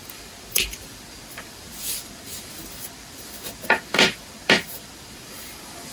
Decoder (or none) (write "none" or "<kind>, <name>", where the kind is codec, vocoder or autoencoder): vocoder, BigVGAN v2